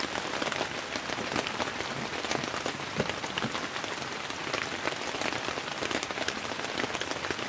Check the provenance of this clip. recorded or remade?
recorded